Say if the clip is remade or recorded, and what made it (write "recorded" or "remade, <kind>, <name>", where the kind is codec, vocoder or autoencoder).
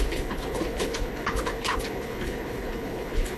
remade, codec, HILCodec